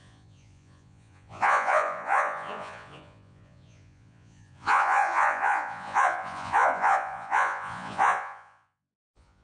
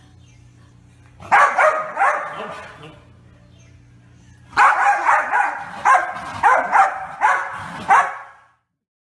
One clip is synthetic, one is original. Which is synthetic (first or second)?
first